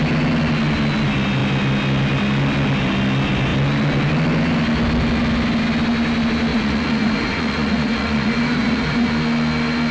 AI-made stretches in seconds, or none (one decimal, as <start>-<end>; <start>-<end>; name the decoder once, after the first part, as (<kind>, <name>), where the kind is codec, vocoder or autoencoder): 6.5-9.1 (vocoder, Vocos)